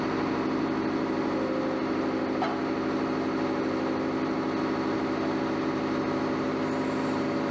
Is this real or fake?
real